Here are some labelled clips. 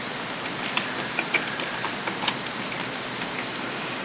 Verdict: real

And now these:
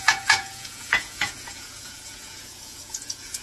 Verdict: fake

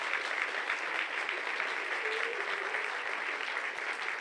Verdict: real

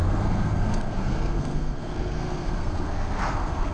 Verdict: fake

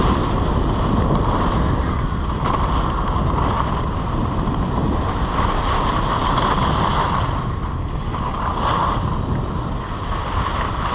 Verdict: real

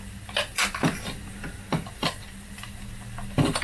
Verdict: real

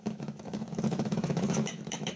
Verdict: fake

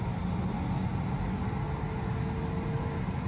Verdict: real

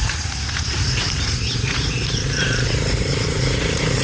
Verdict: fake